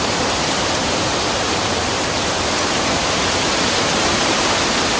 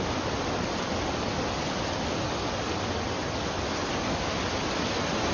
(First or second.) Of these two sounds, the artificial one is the first